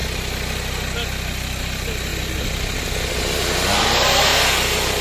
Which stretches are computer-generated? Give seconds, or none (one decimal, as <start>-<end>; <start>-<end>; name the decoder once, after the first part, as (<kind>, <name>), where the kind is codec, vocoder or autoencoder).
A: none

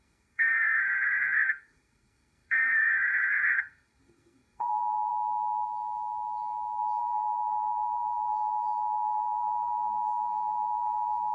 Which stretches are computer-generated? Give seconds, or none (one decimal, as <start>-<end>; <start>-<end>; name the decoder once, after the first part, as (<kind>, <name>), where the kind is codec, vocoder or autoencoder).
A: 0.0-5.1 (codec, SNAC); 7.0-11.3

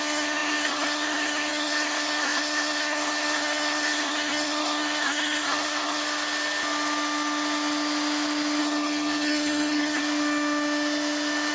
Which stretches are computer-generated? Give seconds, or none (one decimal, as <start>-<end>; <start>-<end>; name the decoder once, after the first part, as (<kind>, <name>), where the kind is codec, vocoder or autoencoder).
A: 0.0-6.0 (codec, SNAC); 8.6-10.0

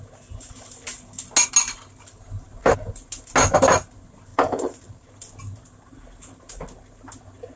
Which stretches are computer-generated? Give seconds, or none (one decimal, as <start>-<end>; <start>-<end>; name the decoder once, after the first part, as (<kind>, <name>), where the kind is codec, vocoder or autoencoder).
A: 2.4-2.9 (vocoder, BigVGAN v2); 4.3-5.1

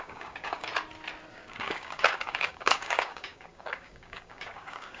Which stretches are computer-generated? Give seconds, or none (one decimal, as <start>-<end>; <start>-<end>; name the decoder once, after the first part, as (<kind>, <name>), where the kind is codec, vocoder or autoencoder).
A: 0.0-0.7 (codec, DAC); 1.3-5.0

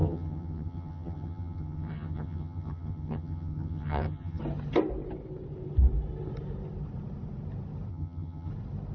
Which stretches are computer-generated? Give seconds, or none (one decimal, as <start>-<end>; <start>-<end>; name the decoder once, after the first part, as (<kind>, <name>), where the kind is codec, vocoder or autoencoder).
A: 0.0-4.4 (vocoder, HiFi-GAN); 7.9-8.5

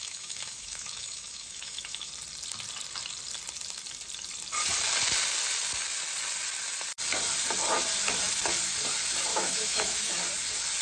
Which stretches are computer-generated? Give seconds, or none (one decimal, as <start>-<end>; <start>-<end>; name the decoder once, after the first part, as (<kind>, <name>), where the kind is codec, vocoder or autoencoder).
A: 0.0-2.1 (autoencoder, DAC-VAE); 9.3-10.1